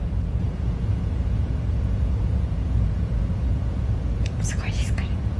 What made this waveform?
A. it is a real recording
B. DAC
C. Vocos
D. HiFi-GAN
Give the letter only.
C